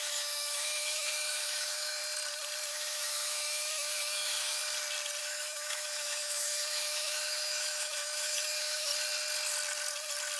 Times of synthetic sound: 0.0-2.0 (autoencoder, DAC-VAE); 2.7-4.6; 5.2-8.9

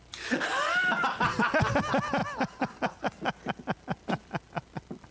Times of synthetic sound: none

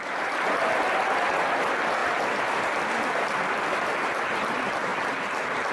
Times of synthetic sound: 4.9-5.7 (vocoder, BigVGAN v2)

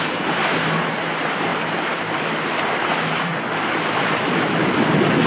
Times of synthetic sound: 0.0-1.5 (vocoder, BigVGAN v2); 2.6-3.3; 4.0-5.3

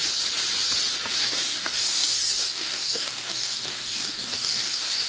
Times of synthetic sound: 1.2-5.1 (codec, DAC)

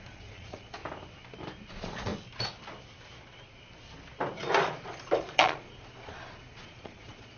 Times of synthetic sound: 0.0-0.8 (vocoder, Vocos); 1.7-2.1; 5.2-7.4

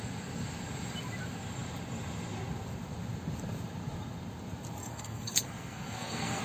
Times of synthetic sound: 4.8-6.4 (codec, SNAC)

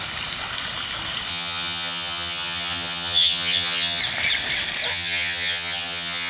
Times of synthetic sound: 1.3-4.0 (vocoder, HiFi-GAN); 4.9-6.3